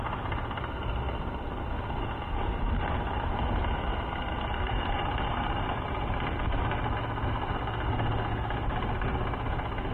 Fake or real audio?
real